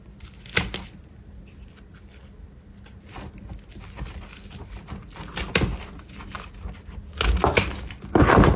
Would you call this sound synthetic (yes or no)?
no